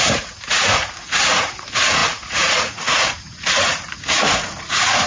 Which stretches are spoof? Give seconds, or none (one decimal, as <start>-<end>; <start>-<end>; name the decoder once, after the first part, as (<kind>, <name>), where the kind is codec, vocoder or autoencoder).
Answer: 0.0-5.1 (vocoder, Vocos)